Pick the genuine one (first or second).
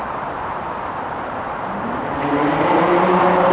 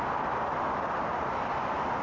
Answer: second